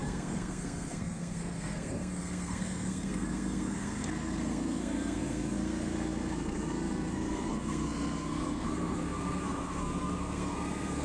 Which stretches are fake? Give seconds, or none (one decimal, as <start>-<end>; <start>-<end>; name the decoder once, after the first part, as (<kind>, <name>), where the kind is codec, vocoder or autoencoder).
0.0-11.0 (codec, SNAC)